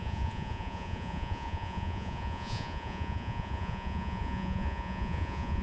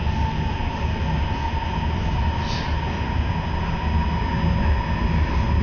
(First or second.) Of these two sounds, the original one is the second